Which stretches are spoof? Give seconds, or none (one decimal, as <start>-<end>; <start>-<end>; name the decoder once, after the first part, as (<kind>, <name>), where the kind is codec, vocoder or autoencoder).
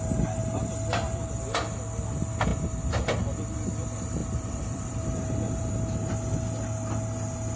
0.4-1.4 (vocoder, BigVGAN v2); 2.5-3.7; 4.2-5.7